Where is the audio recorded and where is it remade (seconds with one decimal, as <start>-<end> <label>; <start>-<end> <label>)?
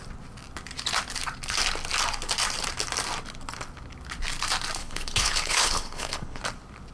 0.0-4.8 recorded; 4.8-6.4 remade; 6.4-6.9 recorded